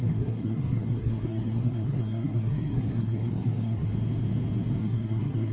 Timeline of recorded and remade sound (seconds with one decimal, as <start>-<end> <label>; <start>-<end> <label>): 0.0-3.9 remade; 3.9-4.8 recorded; 4.8-5.5 remade